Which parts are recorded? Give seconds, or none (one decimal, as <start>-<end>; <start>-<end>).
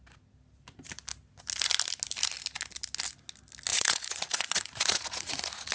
0.0-3.7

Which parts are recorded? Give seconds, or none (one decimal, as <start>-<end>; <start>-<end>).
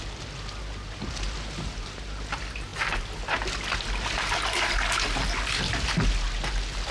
0.0-6.9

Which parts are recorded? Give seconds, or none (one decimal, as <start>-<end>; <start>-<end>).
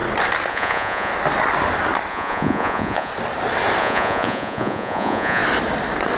0.0-0.5; 1.1-2.1; 3.1-3.8; 5.4-6.2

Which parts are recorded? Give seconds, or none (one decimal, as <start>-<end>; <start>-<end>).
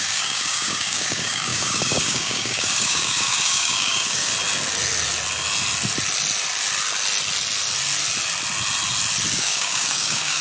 4.3-9.4